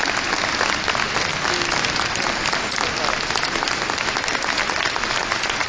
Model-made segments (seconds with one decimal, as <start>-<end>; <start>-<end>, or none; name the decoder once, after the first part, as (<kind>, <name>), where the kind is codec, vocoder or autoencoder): none